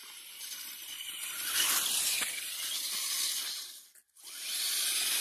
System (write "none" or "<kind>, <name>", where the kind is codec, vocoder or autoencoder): none